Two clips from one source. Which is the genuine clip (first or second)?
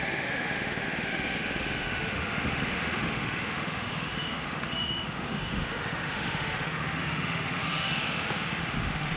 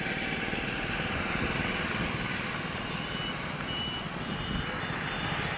second